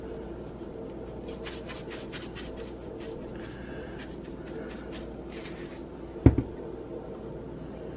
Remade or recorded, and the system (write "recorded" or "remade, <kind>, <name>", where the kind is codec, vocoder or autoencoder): recorded